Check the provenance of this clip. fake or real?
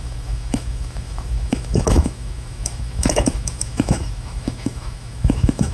fake